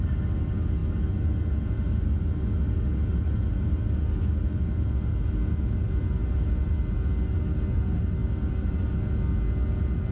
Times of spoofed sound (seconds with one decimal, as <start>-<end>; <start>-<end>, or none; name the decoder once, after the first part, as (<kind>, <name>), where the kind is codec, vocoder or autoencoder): none